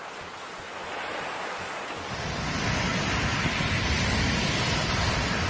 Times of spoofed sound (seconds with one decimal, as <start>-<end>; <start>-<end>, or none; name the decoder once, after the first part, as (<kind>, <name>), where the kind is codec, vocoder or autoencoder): 2.9-4.9 (vocoder, BigVGAN v2)